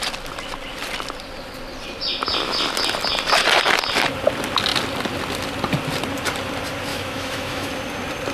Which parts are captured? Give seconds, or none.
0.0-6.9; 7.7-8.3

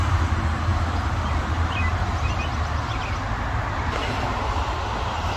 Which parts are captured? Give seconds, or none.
0.0-5.4

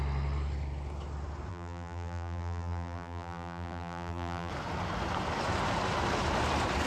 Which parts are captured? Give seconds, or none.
0.0-1.5; 4.5-6.9

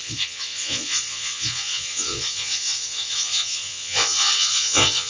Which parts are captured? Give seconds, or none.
none

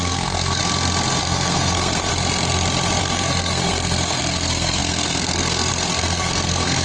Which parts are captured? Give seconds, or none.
0.6-1.2; 2.1-3.0

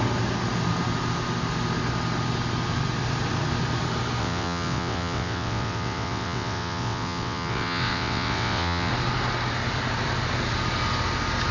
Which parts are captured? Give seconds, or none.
0.0-4.2; 8.9-11.5